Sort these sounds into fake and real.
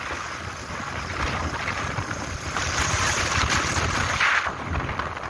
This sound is real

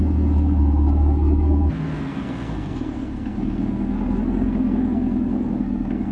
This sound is fake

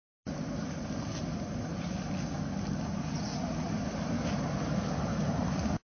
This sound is real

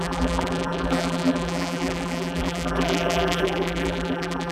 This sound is fake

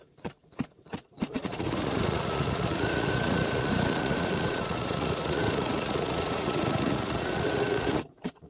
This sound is fake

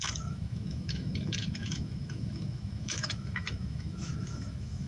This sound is fake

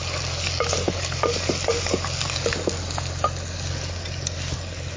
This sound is real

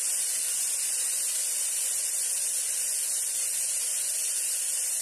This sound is real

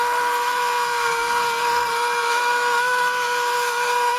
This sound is fake